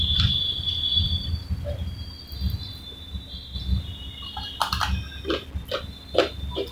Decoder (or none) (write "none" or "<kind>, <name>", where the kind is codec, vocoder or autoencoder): none